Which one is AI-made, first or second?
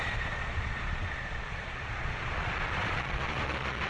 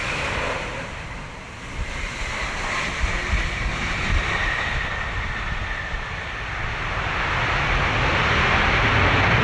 first